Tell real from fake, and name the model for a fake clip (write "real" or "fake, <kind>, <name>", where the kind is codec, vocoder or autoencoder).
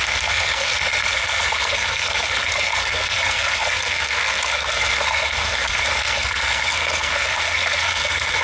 fake, codec, SNAC